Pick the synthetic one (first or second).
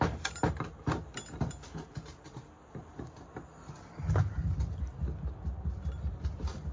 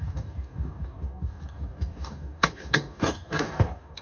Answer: second